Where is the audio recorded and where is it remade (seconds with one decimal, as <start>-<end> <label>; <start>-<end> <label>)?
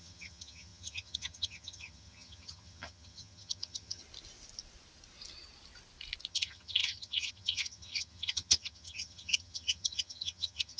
0.0-4.0 remade; 4.0-6.3 recorded; 6.3-10.8 remade